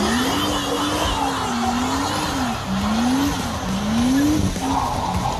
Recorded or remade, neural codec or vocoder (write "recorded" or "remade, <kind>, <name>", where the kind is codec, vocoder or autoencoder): recorded